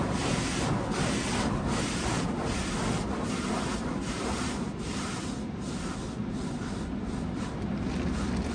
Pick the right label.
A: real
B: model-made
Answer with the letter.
A